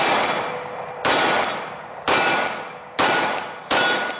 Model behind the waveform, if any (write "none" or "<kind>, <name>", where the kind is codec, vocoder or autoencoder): none